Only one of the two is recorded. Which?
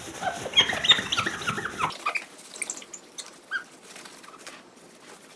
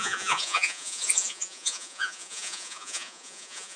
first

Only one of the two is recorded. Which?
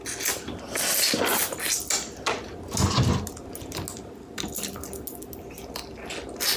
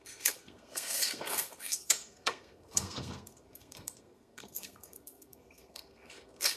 first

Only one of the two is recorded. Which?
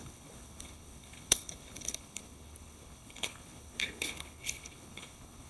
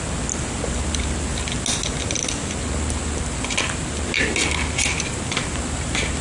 second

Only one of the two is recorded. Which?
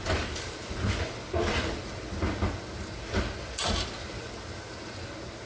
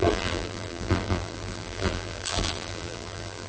first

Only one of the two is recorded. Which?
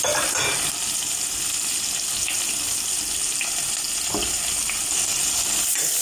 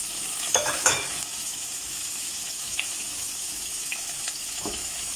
first